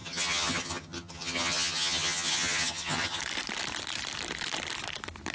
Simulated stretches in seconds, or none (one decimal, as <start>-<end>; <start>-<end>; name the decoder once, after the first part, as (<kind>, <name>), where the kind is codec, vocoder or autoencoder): 0.0-3.2 (vocoder, HiFi-GAN)